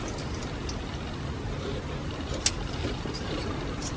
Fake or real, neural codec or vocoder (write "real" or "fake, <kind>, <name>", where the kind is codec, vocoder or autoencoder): real